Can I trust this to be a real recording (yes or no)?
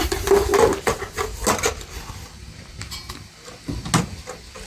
yes